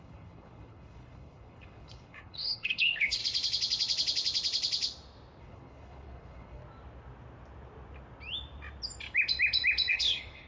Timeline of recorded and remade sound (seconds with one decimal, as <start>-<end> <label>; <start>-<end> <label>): 0.0-3.2 remade; 3.2-5.4 recorded; 5.4-6.6 remade; 6.6-9.9 recorded; 9.9-10.5 remade